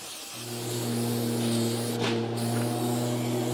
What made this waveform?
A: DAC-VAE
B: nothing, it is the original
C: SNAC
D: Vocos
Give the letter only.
B